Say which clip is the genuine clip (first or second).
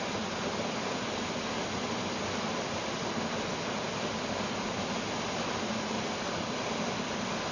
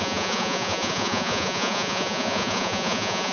first